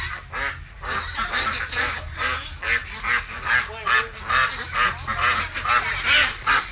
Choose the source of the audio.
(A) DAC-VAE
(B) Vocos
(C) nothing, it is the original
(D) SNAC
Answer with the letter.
C